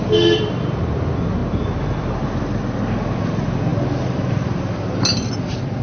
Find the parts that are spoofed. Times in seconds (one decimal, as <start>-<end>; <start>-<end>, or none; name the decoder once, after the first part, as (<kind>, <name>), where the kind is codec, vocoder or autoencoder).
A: none